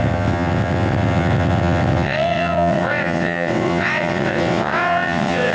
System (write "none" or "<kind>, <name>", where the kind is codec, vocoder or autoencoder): vocoder, WaveNeXt